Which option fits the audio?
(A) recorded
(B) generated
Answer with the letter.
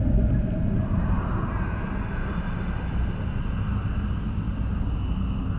A